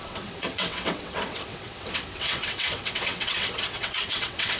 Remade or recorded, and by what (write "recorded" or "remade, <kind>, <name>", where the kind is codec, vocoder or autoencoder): remade, vocoder, WaveNeXt